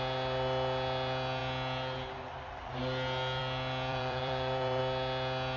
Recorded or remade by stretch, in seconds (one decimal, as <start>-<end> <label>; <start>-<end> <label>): 0.0-3.9 recorded; 3.9-4.8 remade; 4.8-5.6 recorded